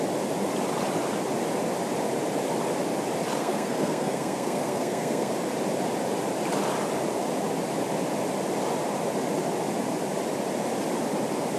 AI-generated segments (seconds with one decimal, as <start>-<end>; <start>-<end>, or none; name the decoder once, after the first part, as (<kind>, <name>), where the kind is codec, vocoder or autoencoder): 3.4-5.3 (codec, SNAC)